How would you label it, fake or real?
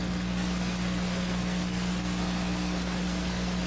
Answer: fake